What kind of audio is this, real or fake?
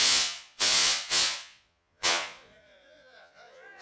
fake